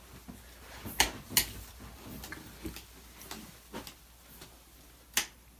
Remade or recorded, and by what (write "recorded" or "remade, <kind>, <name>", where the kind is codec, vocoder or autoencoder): recorded